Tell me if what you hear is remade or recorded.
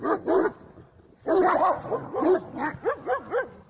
recorded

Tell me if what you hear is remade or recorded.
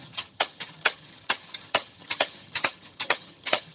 remade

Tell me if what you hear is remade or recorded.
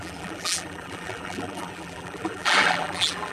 remade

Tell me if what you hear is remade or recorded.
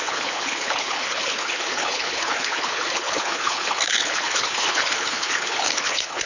remade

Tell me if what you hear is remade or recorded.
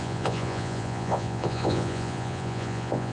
remade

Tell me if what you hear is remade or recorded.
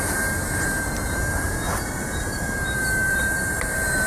remade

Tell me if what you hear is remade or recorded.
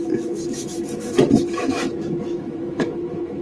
remade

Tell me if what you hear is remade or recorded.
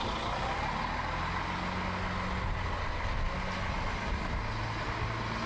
recorded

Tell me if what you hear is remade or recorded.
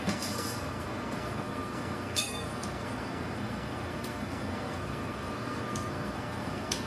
remade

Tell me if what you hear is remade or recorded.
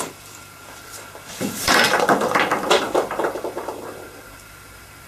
remade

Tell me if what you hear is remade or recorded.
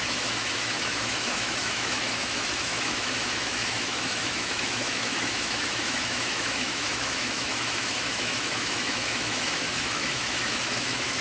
remade